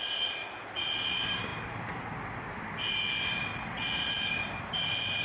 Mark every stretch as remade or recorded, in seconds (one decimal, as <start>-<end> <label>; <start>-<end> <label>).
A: 0.0-0.4 remade; 0.4-1.1 recorded; 1.1-5.2 remade